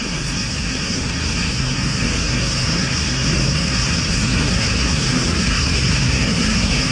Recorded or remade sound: remade